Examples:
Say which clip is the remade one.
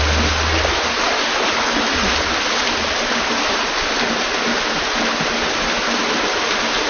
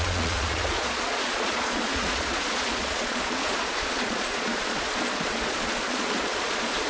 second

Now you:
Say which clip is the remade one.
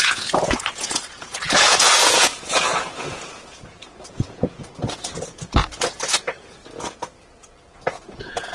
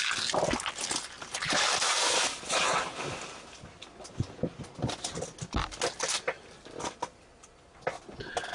first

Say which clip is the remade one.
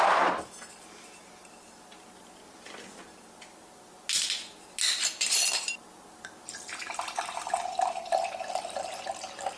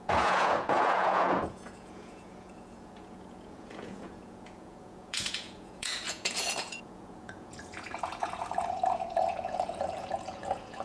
second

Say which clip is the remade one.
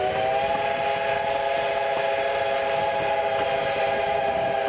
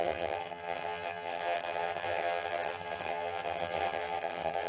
second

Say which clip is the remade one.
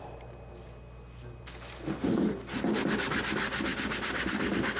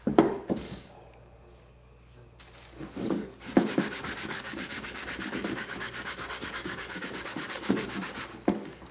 second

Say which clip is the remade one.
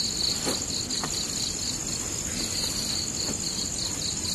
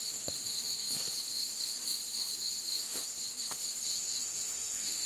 second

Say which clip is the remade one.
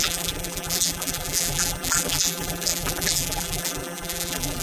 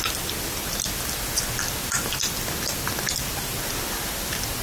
first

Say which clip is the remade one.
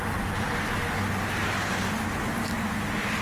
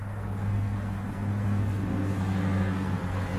second